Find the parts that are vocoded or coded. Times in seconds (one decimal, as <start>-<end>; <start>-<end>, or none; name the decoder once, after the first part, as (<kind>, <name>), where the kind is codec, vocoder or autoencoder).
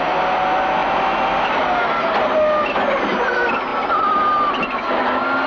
none